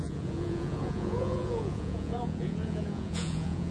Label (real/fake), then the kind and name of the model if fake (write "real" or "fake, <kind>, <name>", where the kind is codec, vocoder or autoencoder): fake, vocoder, Vocos